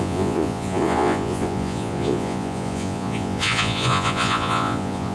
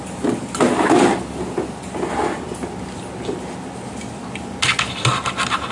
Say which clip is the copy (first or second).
first